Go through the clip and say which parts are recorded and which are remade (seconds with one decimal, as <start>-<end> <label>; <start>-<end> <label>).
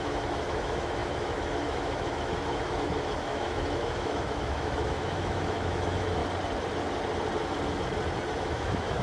0.0-6.2 remade; 6.2-8.4 recorded; 8.4-9.0 remade